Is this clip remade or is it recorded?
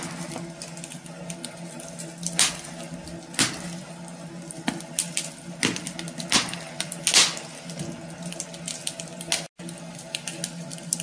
recorded